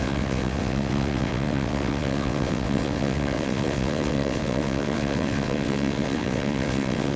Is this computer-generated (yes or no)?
yes